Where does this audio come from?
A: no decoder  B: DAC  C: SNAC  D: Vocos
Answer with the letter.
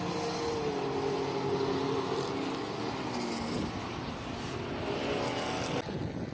A